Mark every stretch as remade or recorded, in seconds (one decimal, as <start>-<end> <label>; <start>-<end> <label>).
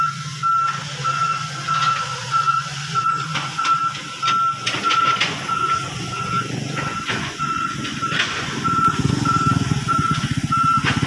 0.0-0.4 remade; 0.4-1.0 recorded; 1.0-3.8 remade; 3.8-4.6 recorded; 4.6-11.1 remade